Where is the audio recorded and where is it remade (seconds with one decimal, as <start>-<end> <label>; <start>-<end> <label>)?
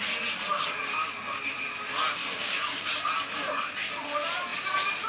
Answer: 0.0-2.2 recorded; 2.2-2.9 remade; 2.9-5.1 recorded